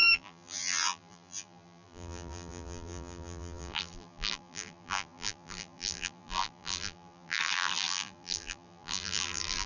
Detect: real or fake fake